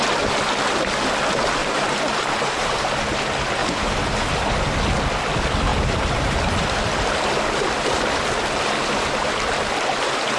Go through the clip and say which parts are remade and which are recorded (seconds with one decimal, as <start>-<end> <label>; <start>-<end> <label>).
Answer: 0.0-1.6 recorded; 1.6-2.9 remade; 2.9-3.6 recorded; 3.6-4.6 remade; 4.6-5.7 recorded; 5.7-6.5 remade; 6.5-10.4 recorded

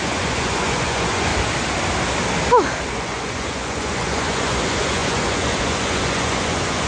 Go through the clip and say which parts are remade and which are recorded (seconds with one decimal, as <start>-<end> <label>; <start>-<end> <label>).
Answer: 0.0-1.3 remade; 1.3-2.9 recorded; 2.9-6.9 remade

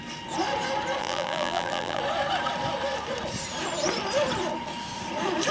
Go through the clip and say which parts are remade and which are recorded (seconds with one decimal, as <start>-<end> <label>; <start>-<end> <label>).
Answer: 0.0-1.0 recorded; 1.0-2.0 remade; 2.0-5.5 recorded

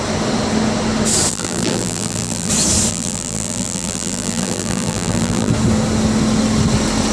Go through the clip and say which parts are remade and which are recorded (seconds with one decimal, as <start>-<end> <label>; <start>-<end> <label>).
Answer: 0.0-1.3 recorded; 1.3-2.5 remade; 2.5-2.9 recorded; 2.9-5.5 remade; 5.5-7.1 recorded

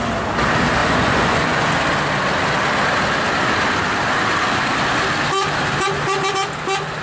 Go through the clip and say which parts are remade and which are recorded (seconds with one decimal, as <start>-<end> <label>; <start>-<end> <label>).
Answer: 0.0-0.8 recorded; 0.8-1.8 remade; 1.8-7.0 recorded

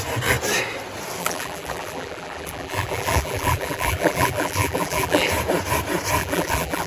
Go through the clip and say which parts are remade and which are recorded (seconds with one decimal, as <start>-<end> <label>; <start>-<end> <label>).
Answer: 0.0-1.2 recorded; 1.2-5.3 remade; 5.3-6.2 recorded; 6.2-6.9 remade